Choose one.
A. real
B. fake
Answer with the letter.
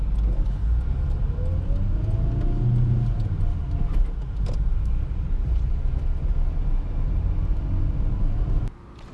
A